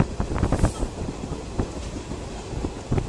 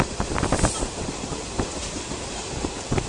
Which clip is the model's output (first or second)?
second